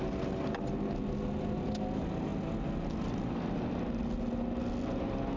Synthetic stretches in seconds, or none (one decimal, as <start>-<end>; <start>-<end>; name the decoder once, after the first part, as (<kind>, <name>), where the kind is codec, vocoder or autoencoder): none